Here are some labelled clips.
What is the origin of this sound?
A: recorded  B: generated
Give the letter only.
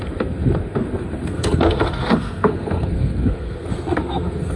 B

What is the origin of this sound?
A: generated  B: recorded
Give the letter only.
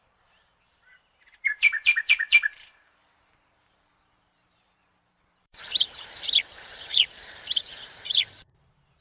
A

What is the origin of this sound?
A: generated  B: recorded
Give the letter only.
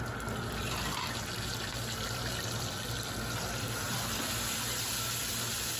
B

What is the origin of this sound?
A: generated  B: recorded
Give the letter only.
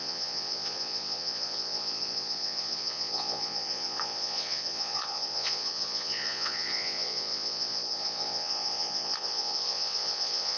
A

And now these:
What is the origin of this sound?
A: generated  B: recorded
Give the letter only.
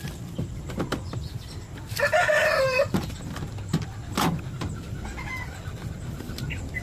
B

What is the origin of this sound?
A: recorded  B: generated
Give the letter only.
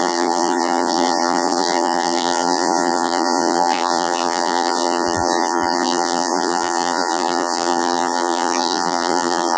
B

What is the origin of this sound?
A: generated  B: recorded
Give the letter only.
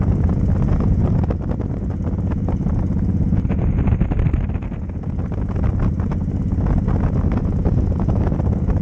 B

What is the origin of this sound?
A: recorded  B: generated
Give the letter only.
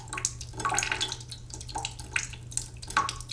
A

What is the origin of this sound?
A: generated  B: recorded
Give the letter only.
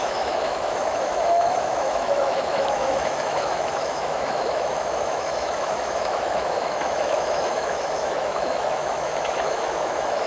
A